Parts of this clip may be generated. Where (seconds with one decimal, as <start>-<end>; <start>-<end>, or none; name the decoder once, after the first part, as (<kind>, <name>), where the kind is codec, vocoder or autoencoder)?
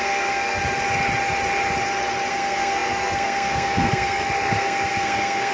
0.0-0.6 (codec, SNAC); 2.3-5.5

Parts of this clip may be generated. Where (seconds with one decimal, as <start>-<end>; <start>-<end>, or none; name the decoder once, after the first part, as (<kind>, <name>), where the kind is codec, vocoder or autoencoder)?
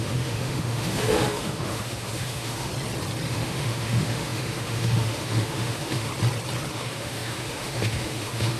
0.0-2.7 (autoencoder, DAC-VAE); 3.3-6.1; 6.7-8.6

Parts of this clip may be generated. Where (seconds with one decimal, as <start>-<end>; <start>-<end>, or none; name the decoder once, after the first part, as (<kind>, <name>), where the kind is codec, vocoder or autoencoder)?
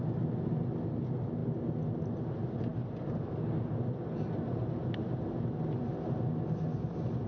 none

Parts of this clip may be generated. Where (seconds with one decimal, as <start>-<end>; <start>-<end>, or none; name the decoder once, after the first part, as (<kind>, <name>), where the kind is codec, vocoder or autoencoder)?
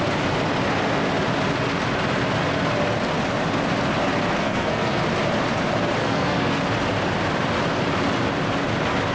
4.4-5.0 (codec, SNAC); 6.0-6.6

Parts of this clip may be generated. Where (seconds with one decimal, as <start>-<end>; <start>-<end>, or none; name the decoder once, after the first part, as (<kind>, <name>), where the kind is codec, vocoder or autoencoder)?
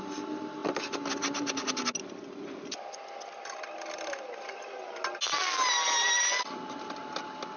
none